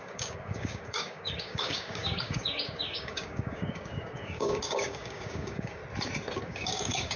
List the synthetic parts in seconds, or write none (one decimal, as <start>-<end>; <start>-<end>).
0.0-5.8; 6.4-7.2